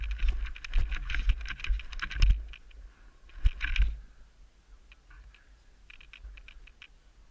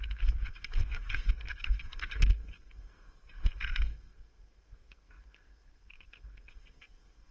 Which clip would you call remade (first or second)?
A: second